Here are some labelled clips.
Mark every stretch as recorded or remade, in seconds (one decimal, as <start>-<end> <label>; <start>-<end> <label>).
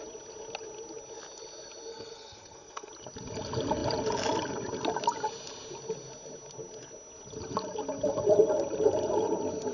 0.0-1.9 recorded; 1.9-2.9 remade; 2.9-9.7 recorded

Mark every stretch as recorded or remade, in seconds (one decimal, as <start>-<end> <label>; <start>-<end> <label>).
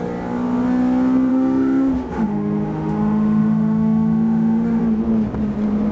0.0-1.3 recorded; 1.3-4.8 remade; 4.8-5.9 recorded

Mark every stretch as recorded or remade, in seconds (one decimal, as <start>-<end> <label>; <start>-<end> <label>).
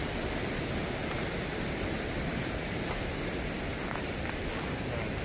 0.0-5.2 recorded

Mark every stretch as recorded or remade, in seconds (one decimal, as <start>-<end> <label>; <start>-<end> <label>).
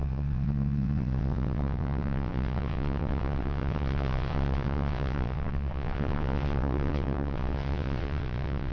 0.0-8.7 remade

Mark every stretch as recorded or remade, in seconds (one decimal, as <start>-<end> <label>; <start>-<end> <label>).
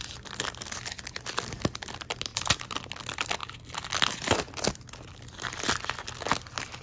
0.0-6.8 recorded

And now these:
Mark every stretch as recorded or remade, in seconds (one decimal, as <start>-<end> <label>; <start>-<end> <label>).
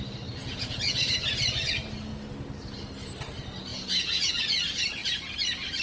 0.0-0.4 recorded; 0.4-1.0 remade; 1.0-3.7 recorded; 3.7-4.3 remade; 4.3-5.8 recorded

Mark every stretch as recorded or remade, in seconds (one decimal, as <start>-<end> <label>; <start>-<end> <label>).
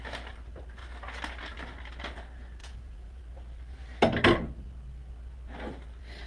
0.0-2.6 recorded; 2.6-3.2 remade; 3.2-6.3 recorded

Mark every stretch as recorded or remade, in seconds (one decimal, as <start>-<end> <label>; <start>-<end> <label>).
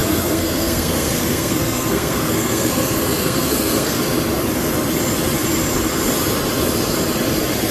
0.0-4.0 remade; 4.0-7.7 recorded